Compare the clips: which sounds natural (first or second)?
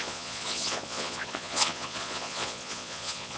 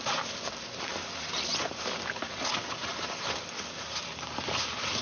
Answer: second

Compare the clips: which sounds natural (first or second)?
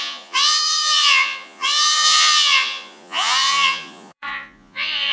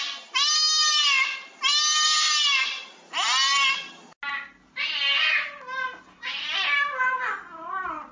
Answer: second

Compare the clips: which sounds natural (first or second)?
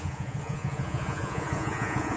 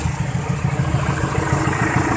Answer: second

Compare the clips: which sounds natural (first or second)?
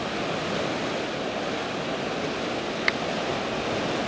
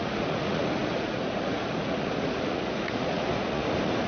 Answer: first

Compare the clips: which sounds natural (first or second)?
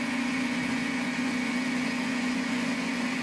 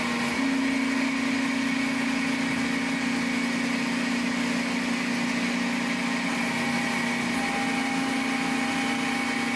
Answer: second